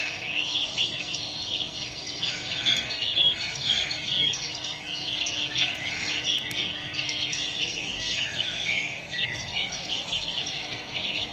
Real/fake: fake